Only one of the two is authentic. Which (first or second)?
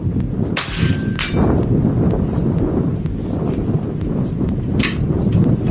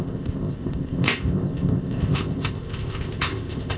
first